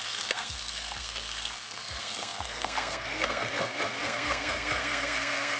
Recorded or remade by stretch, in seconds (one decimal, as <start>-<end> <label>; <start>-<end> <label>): 0.0-5.6 remade